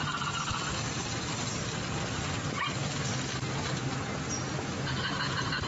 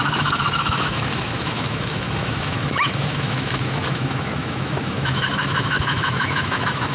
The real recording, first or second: first